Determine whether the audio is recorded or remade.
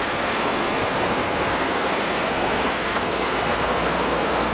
remade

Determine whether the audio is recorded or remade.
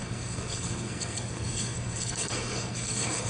remade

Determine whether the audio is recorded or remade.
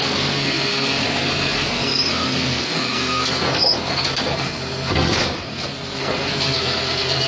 remade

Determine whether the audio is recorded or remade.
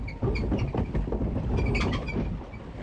recorded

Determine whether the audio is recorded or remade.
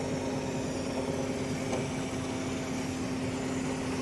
recorded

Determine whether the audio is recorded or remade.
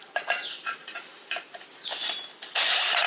recorded